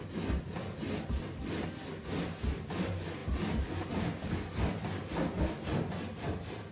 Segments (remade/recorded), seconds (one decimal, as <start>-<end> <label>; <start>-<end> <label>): 0.0-6.7 recorded